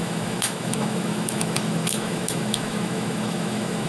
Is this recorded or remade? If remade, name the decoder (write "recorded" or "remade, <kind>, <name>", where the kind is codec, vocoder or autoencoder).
remade, autoencoder, DAC-VAE